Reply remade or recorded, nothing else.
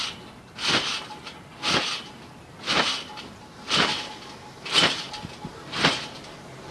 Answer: recorded